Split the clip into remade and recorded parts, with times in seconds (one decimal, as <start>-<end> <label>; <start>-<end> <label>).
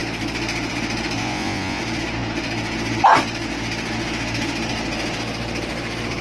0.0-1.2 recorded; 1.2-1.8 remade; 1.8-6.2 recorded